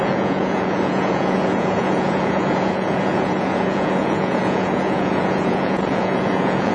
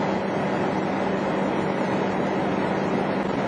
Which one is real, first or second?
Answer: second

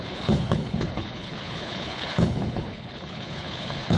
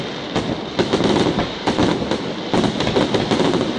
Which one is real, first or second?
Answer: second